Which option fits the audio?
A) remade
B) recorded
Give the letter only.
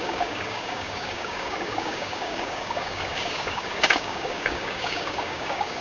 A